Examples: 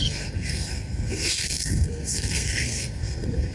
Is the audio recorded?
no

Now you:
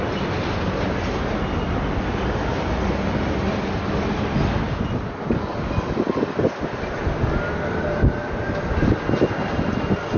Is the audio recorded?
yes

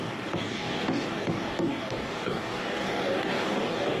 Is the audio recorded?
no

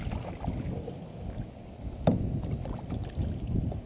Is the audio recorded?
yes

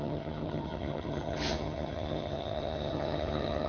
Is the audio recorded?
no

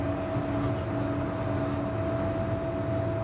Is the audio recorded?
yes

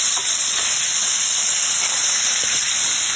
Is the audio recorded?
yes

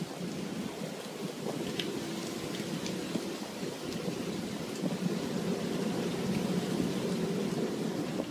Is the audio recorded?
yes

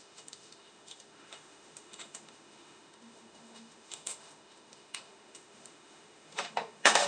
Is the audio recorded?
no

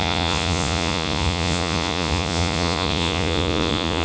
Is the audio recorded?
no